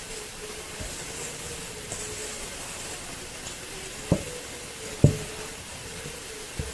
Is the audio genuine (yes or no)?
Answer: yes